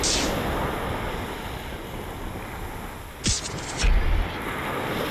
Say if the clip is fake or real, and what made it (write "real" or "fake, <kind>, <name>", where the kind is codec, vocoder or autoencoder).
real